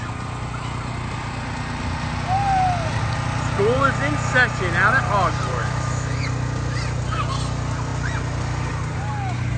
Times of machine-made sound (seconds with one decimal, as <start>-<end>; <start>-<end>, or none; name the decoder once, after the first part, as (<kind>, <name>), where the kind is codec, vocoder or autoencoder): 5.6-6.2 (autoencoder, DAC-VAE)